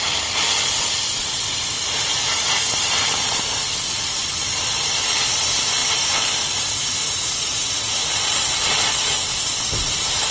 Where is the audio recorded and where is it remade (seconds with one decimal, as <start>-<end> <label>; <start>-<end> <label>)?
0.0-7.0 recorded; 7.0-8.2 remade; 8.2-10.3 recorded